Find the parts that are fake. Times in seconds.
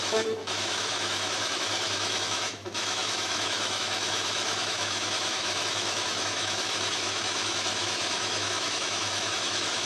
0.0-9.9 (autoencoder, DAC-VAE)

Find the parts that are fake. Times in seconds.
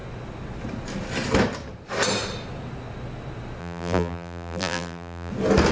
3.6-5.3 (vocoder, BigVGAN v2)